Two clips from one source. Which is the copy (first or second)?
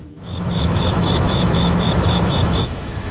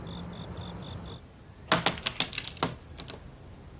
first